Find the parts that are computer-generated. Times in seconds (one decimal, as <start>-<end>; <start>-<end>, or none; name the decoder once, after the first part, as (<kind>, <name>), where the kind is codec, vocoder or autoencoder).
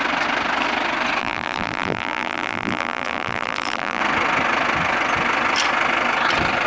1.2-4.0 (vocoder, BigVGAN v2)